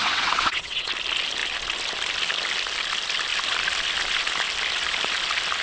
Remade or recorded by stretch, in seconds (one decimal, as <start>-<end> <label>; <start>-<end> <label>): 0.0-0.9 remade; 0.9-5.6 recorded